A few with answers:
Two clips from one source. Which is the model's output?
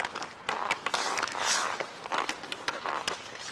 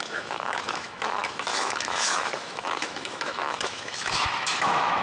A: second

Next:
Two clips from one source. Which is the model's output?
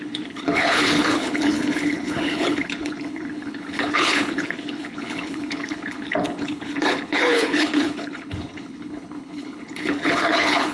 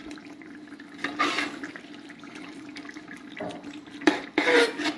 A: first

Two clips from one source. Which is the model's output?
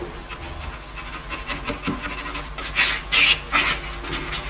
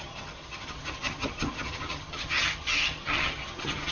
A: second